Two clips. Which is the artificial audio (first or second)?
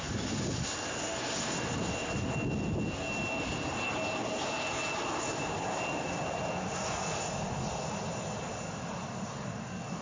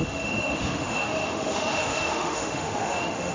second